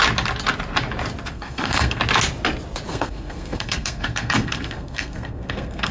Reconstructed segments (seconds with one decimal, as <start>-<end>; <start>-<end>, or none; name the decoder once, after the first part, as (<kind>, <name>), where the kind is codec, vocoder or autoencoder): 1.3-2.0 (codec, SNAC); 2.9-5.9